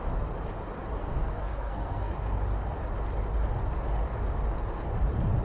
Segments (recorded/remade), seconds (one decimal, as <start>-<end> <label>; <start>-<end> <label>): 0.0-1.0 recorded; 1.0-2.1 remade; 2.1-5.4 recorded

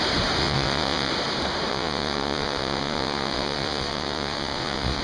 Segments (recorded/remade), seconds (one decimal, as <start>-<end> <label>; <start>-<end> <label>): 0.0-0.4 recorded; 0.4-1.1 remade; 1.1-1.7 recorded; 1.7-5.0 remade

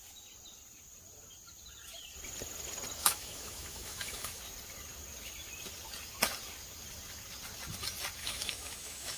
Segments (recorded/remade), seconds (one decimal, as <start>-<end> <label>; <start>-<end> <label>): 0.0-3.0 recorded; 3.0-4.4 remade; 4.4-8.2 recorded; 8.2-9.2 remade

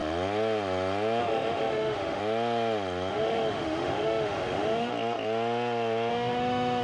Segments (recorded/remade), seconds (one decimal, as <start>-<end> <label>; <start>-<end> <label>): 0.0-1.2 recorded; 1.2-2.2 remade; 2.2-3.1 recorded; 3.1-4.9 remade; 4.9-6.1 recorded; 6.1-6.8 remade

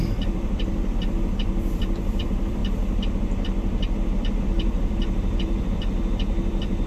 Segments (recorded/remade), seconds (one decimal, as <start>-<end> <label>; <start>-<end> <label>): 0.0-2.6 remade; 2.6-4.4 recorded; 4.4-6.9 remade